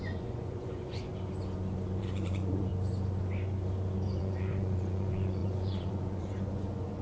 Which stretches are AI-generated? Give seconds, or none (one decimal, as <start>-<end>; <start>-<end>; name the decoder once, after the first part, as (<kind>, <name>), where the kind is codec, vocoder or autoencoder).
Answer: 0.0-1.1 (vocoder, Vocos); 2.0-2.7; 4.2-7.0